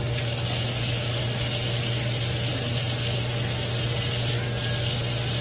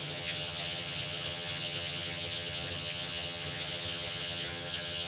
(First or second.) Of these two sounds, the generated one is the second